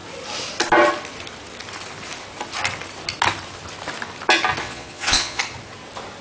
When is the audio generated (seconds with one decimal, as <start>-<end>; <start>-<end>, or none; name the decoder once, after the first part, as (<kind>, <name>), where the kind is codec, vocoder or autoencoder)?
4.6-5.4 (vocoder, Vocos)